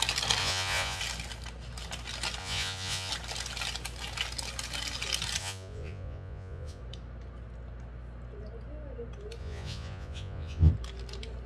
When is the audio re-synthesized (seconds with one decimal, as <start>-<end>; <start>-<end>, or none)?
0.4-1.0; 2.4-3.1; 5.4-6.8; 9.4-10.7